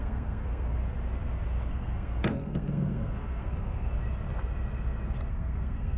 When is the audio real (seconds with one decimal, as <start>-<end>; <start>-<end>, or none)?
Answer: 0.8-1.7; 3.9-5.3